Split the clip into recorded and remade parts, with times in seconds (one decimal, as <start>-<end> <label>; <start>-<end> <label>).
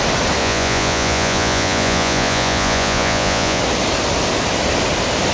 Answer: 0.0-0.4 recorded; 0.4-3.6 remade; 3.6-5.3 recorded